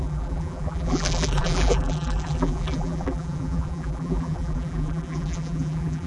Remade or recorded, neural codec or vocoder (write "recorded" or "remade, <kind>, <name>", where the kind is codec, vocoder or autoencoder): remade, vocoder, BigVGAN v2